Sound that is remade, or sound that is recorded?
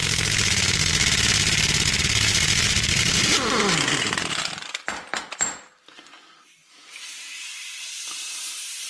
recorded